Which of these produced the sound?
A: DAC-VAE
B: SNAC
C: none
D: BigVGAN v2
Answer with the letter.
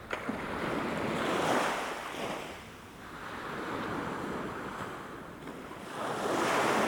C